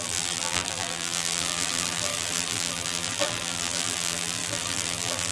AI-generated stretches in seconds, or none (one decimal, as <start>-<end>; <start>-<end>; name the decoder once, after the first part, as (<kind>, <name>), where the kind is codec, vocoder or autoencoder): 0.0-5.3 (vocoder, BigVGAN v2)